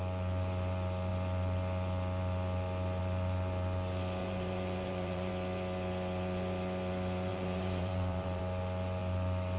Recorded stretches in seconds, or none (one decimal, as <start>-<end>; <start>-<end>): 0.0-4.2; 5.3-7.3; 8.4-9.6